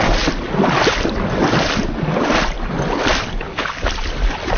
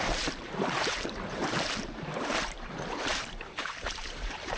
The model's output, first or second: second